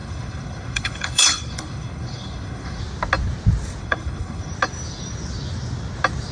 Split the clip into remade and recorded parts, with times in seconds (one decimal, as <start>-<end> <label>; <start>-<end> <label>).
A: 0.0-2.8 remade; 2.8-3.8 recorded; 3.8-4.5 remade; 4.5-6.3 recorded